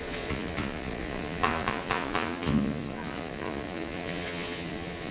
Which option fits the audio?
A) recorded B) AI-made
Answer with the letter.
B